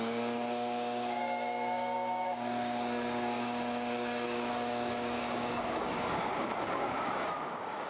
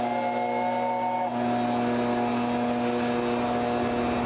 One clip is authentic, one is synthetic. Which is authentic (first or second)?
second